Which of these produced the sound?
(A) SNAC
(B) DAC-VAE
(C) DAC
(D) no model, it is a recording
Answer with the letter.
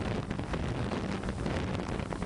D